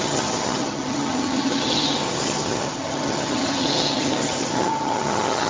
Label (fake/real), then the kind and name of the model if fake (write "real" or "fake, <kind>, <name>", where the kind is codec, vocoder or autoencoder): fake, vocoder, HiFi-GAN